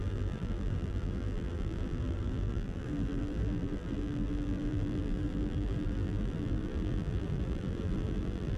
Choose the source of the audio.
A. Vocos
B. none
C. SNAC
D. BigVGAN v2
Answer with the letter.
D